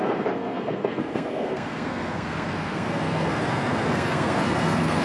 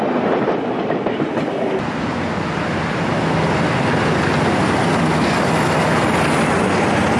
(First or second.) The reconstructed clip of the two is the first